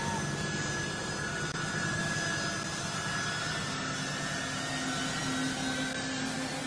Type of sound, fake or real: real